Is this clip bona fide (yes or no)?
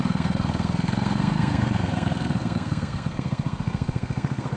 no